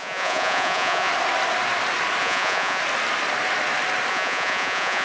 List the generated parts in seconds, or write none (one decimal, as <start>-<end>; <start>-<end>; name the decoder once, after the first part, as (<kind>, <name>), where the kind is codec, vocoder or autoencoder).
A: 0.0-1.1 (vocoder, Vocos); 2.2-2.8; 4.1-5.0